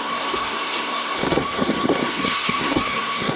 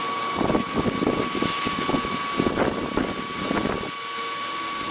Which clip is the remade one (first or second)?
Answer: first